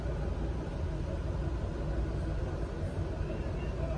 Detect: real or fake real